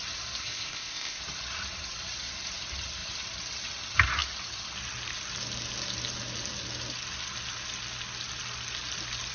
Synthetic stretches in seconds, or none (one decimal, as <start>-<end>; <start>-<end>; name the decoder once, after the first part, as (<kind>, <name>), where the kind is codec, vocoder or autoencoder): 0.4-1.2 (codec, ZipCodec)